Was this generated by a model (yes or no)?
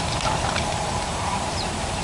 yes